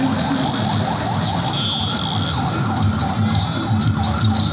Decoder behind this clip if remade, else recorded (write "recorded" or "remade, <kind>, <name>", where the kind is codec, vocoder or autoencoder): recorded